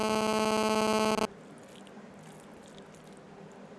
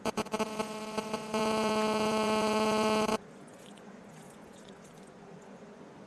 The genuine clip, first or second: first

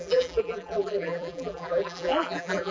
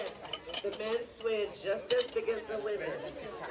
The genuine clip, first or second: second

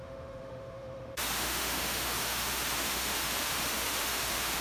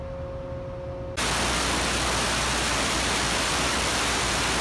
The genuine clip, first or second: second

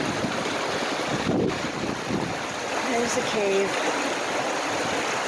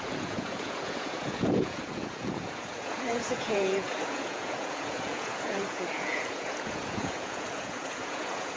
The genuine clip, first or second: first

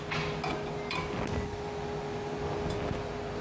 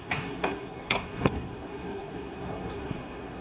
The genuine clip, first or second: first